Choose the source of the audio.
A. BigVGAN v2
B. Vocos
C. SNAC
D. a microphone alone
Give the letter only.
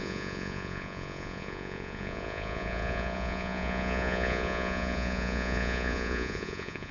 B